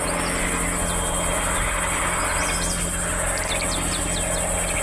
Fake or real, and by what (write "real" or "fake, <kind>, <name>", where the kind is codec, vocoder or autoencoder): real